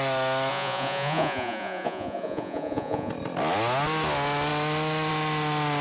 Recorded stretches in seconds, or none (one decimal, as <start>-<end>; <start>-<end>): 0.0-0.5; 3.1-5.8

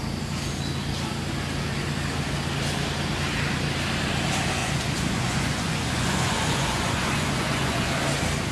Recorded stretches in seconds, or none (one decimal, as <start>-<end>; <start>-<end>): 0.0-4.6; 7.9-8.5